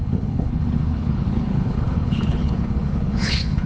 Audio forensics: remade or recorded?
remade